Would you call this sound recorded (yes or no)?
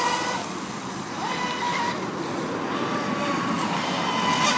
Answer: yes